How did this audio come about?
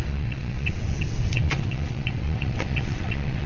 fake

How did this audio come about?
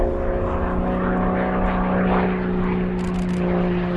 real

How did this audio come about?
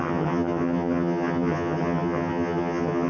fake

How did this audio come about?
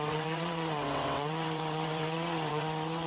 fake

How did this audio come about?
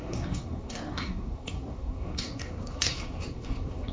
fake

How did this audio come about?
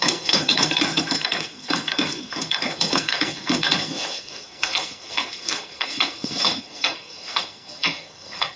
fake